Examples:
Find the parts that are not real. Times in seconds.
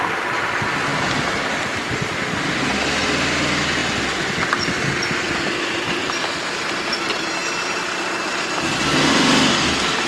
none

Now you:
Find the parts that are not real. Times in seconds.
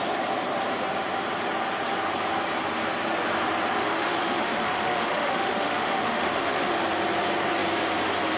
3.8-6.8 (autoencoder, DAC-VAE)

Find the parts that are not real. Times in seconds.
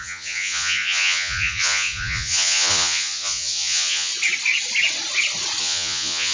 0.0-4.1 (vocoder, Vocos); 5.6-6.3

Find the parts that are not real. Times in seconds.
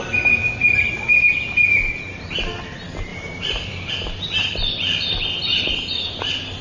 3.1-3.9 (vocoder, BigVGAN v2); 5.5-6.1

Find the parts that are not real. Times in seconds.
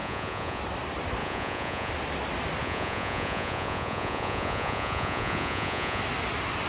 0.0-0.6 (vocoder, Vocos); 1.2-1.9; 2.6-6.0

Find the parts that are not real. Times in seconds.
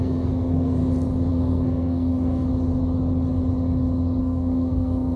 0.0-0.8 (codec, SNAC); 1.3-2.5; 4.2-5.2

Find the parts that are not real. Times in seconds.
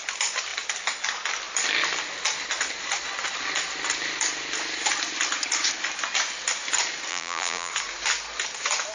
7.1-7.7 (vocoder, BigVGAN v2)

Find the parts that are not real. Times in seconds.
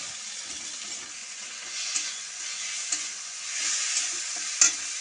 1.2-4.2 (vocoder, Vocos)